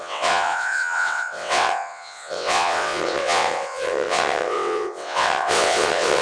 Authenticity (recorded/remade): remade